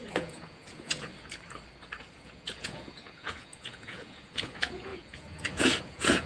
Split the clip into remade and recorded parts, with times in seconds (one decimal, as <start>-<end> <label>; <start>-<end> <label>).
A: 0.0-1.1 remade; 1.1-2.0 recorded; 2.0-6.3 remade